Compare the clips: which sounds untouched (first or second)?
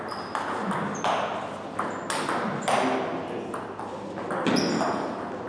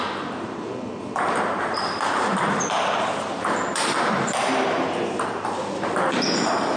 first